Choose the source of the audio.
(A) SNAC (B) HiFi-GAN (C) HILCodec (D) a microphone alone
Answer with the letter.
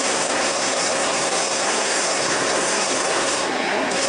A